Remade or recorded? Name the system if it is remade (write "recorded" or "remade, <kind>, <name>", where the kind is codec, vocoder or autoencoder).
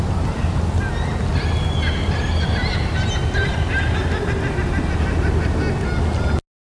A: recorded